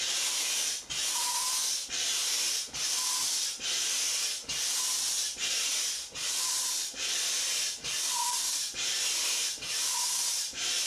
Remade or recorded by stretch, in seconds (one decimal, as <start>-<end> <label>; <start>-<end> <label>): 0.0-10.9 remade